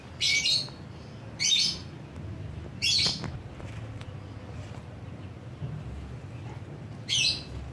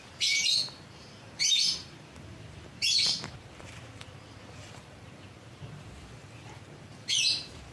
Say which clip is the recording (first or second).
first